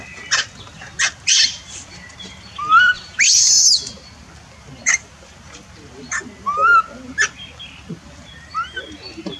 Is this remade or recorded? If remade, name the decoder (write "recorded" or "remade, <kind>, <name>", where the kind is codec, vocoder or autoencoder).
recorded